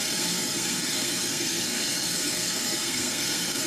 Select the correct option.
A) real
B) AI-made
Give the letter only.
B